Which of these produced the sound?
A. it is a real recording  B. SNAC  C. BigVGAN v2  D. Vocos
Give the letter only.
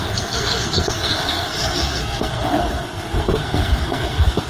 B